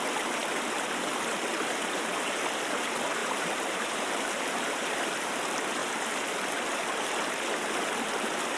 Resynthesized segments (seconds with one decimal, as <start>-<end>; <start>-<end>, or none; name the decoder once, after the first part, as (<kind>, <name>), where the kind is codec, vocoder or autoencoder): 1.5-2.4 (vocoder, BigVGAN v2); 3.2-5.3